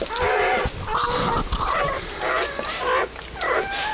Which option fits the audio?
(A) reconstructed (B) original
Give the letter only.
B